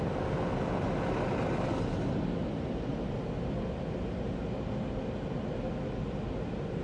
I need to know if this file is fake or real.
real